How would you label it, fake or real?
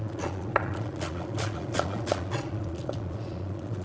fake